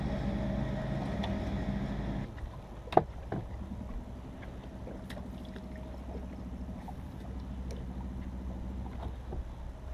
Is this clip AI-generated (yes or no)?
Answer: no